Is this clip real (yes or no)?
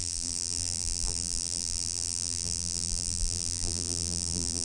no